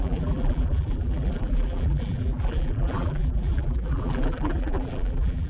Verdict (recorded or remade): remade